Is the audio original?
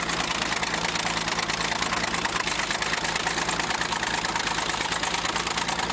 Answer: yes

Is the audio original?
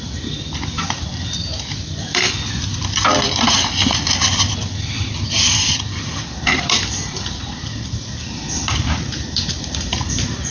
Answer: no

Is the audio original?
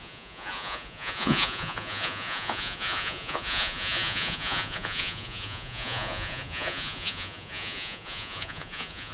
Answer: no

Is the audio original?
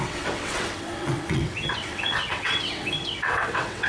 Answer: no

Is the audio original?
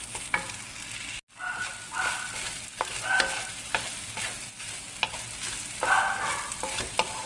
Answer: yes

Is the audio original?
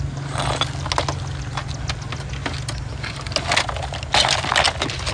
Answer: yes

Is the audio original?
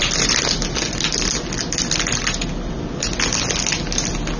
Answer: yes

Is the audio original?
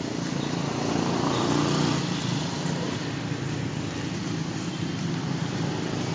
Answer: yes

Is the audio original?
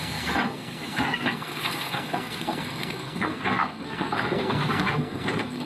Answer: no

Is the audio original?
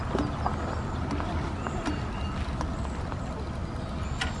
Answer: yes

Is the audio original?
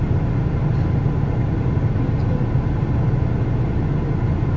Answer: yes